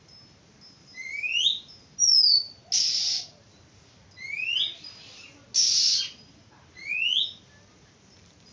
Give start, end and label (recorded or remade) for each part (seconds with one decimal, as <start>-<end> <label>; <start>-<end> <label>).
0.0-8.5 recorded